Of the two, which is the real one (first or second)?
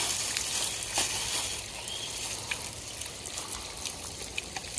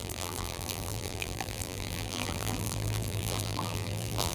first